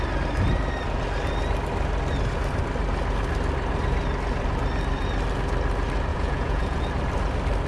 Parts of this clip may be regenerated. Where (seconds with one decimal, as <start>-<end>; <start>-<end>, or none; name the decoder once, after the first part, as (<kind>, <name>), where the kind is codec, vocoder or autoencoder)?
6.1-6.8 (vocoder, Vocos)